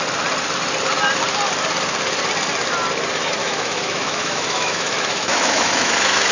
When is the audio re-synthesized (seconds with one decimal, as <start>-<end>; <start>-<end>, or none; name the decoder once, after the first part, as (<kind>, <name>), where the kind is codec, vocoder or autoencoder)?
3.4-6.3 (autoencoder, DAC-VAE)